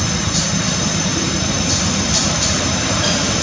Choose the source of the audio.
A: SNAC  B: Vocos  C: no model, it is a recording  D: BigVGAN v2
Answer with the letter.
C